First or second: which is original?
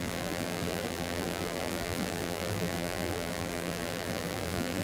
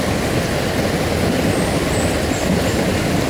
second